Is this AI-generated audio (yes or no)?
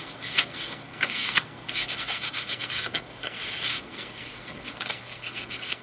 yes